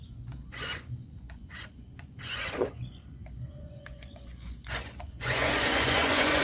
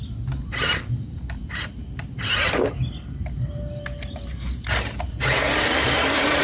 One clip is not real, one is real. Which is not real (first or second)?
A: first